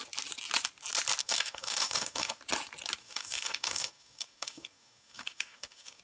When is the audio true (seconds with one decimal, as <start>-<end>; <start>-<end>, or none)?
0.0-1.2; 2.4-3.0